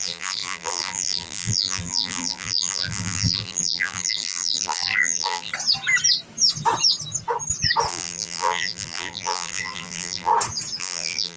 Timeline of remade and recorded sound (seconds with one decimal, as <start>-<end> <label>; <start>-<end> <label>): 0.0-5.5 remade; 5.5-7.9 recorded; 7.9-10.3 remade; 10.3-10.8 recorded; 10.8-11.4 remade